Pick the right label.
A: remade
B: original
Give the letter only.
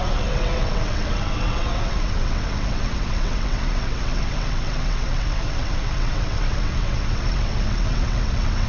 A